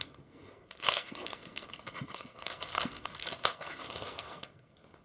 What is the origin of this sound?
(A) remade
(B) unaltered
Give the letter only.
A